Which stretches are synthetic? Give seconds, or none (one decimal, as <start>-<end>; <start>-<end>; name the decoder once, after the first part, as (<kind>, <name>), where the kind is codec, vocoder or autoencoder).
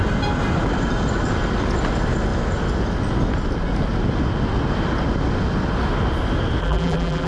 6.6-7.3 (vocoder, BigVGAN v2)